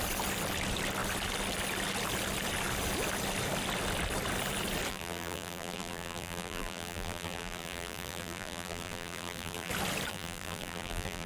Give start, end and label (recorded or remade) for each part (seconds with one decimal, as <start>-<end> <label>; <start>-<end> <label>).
0.0-4.9 recorded; 4.9-9.7 remade; 9.7-10.1 recorded; 10.1-11.3 remade